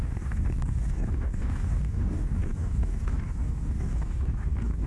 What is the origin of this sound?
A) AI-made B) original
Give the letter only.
A